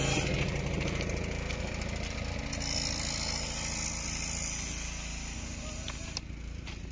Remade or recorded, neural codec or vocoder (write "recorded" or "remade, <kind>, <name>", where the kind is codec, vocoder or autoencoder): recorded